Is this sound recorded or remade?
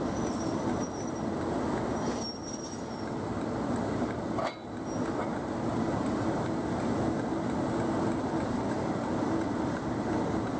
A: recorded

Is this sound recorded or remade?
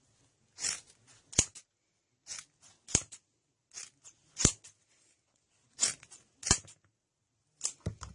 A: recorded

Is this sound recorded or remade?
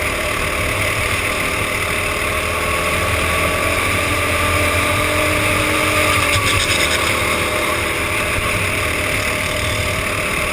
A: recorded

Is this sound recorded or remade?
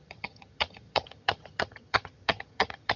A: remade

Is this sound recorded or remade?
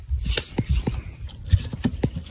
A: recorded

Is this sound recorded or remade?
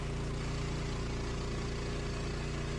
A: recorded